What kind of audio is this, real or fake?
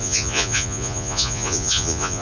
fake